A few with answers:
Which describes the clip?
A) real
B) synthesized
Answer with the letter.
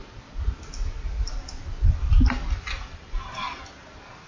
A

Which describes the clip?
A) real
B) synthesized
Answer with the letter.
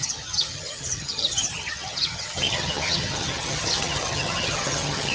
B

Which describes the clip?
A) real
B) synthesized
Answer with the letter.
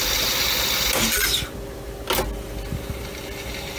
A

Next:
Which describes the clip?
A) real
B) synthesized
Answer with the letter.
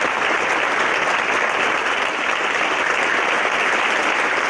A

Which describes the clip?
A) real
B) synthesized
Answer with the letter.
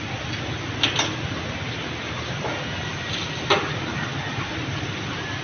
A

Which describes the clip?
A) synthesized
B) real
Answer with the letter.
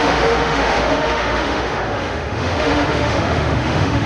A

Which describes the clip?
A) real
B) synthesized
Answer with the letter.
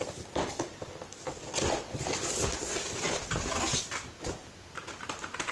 A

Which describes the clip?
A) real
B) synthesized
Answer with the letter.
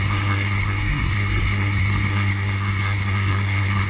B